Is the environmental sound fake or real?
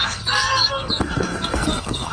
fake